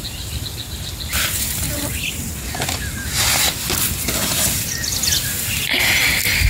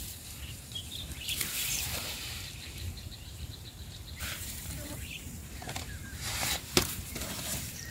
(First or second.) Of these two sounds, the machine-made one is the second